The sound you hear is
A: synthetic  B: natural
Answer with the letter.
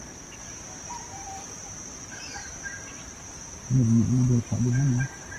A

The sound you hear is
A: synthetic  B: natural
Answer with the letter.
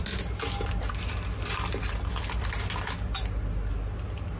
B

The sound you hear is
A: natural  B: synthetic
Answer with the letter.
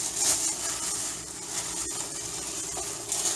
A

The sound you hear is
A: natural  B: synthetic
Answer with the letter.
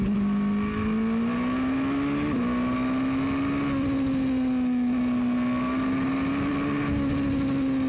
A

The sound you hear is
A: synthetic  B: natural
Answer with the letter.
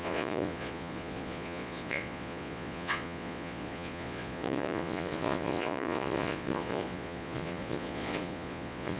A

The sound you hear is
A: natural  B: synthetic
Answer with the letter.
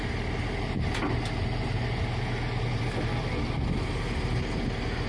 A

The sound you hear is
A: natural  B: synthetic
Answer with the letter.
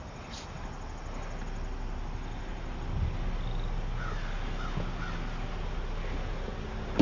A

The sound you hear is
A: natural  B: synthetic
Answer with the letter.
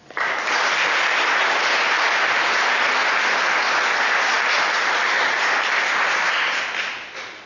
A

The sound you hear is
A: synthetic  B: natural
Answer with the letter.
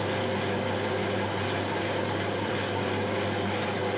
B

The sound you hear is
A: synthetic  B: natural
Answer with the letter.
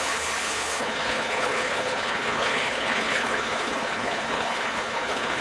A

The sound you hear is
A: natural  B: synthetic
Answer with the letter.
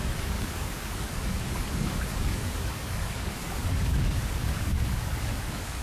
B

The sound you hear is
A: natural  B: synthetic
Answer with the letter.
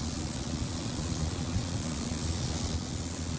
B